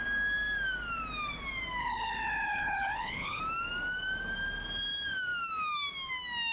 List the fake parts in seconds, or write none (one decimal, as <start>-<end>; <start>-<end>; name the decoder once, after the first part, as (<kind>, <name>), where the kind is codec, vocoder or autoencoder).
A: 1.8-3.4 (codec, HILCodec)